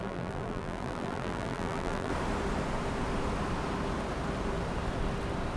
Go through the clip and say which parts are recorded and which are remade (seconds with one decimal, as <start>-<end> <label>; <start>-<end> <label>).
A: 0.0-2.1 remade; 2.1-5.6 recorded